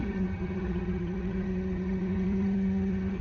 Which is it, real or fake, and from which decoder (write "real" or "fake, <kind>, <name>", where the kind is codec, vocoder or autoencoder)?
fake, vocoder, HiFi-GAN